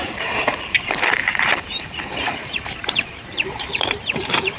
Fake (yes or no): yes